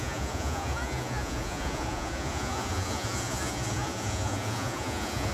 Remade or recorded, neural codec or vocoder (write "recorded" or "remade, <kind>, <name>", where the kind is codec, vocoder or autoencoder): remade, vocoder, Vocos